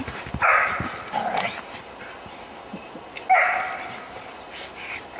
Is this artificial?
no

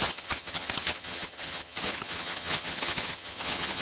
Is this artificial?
yes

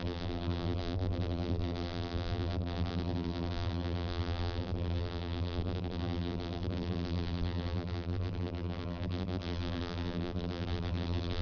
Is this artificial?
yes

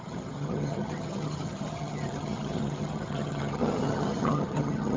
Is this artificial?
yes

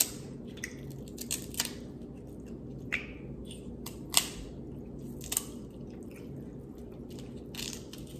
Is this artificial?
no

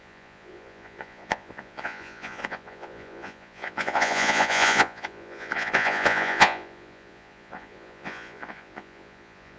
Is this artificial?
yes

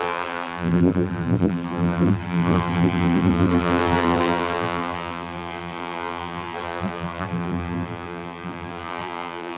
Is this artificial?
yes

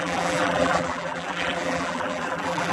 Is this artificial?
yes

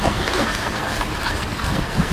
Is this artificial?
yes